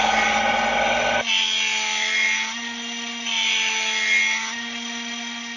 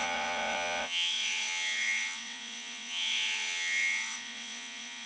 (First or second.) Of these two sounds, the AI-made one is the second